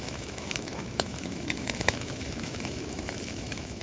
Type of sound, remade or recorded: remade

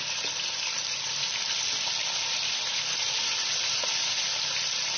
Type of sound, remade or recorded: recorded